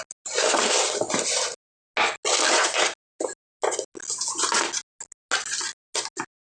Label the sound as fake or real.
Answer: real